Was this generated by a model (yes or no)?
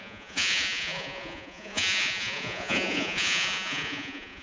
yes